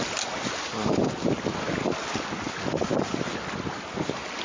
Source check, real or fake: real